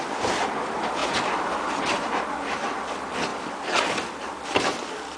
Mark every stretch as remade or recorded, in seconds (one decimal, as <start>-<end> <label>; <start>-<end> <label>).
0.0-1.0 recorded; 1.0-2.2 remade; 2.2-3.3 recorded; 3.3-4.3 remade; 4.3-5.2 recorded